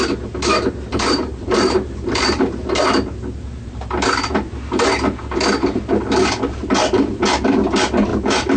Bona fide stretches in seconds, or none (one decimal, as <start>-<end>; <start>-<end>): 0.0-0.9; 4.9-8.1